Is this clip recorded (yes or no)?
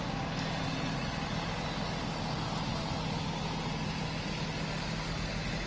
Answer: yes